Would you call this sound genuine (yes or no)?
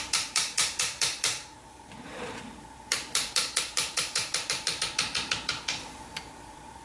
no